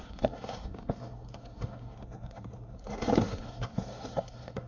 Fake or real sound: fake